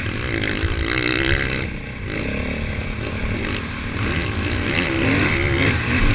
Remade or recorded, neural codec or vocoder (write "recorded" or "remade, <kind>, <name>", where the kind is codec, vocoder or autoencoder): recorded